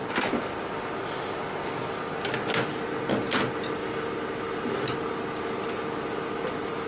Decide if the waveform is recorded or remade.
recorded